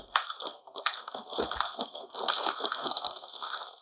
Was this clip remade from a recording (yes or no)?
yes